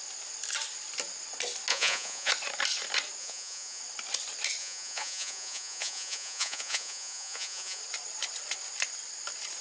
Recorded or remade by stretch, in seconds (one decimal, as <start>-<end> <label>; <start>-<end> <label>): 0.0-1.7 recorded; 1.7-2.3 remade; 2.3-3.2 recorded; 3.2-3.8 remade; 3.8-4.6 recorded; 4.6-7.8 remade; 7.8-9.6 recorded